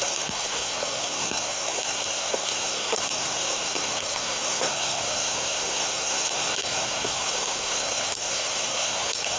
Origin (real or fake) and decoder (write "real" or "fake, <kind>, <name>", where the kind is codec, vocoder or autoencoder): fake, codec, SNAC